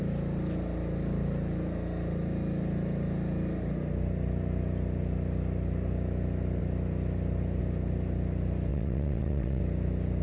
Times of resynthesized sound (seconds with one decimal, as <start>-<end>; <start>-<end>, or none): 8.7-9.6